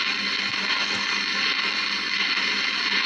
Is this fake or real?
real